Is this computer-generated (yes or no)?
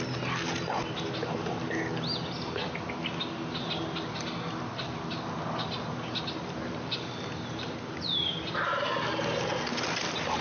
no